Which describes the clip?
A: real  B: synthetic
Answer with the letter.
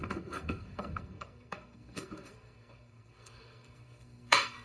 B